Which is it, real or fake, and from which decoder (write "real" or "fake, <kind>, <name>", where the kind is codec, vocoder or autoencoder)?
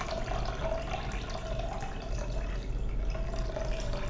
real